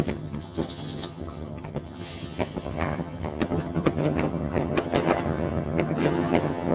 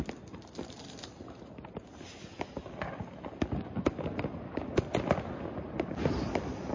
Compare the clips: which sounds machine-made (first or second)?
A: first